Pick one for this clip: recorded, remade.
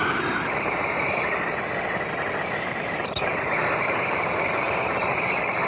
remade